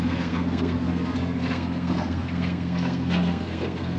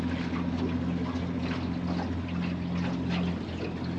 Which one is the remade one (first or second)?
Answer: first